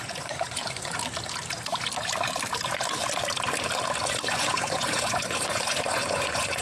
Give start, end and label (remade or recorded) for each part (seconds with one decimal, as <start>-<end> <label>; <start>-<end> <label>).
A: 0.0-1.0 remade; 1.0-4.1 recorded; 4.1-6.6 remade